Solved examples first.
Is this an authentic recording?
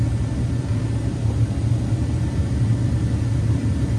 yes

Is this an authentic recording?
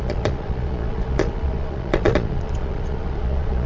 no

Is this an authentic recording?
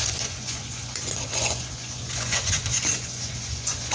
no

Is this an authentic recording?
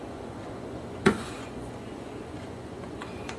no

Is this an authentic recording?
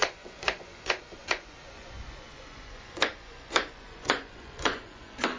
no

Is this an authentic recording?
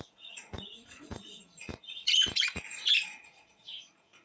no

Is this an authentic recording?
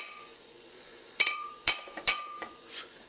no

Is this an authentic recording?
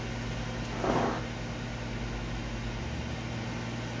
yes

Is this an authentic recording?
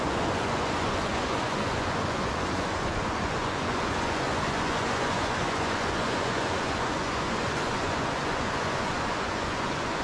no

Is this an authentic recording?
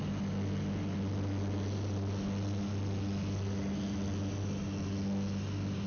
yes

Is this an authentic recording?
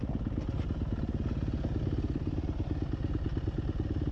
yes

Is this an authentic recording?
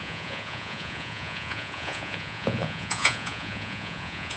no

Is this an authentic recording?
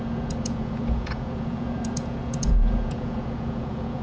no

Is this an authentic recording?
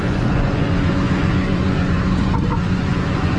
no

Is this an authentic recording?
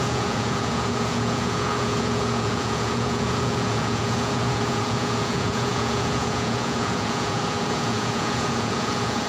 no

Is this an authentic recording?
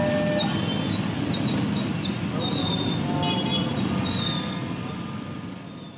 yes